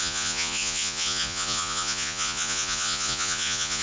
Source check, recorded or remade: remade